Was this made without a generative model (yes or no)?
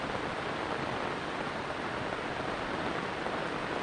yes